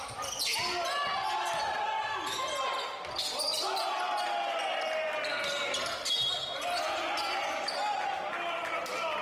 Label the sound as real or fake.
real